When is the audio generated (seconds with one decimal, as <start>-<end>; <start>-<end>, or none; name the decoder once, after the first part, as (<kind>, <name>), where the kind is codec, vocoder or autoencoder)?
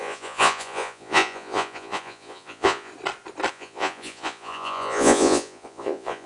0.0-2.9 (vocoder, Vocos); 3.5-6.3